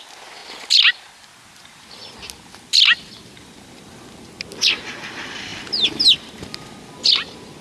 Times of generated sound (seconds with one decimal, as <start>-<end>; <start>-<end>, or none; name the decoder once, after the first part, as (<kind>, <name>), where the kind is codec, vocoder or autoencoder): none